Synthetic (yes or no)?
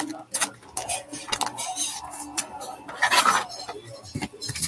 no